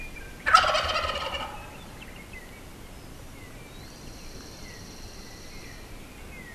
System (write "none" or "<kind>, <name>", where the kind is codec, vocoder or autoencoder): none